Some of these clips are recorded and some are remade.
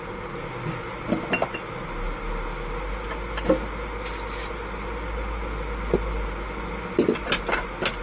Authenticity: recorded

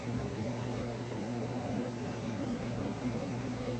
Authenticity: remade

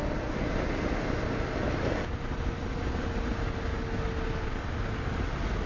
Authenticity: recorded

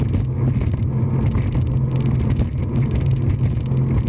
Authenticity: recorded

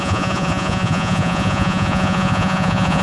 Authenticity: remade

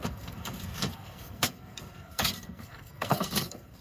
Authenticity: remade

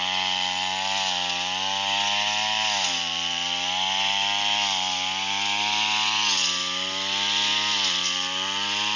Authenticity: recorded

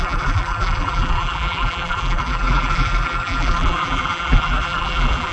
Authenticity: remade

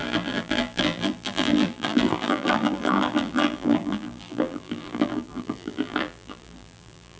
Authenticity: remade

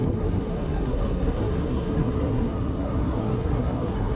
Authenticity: remade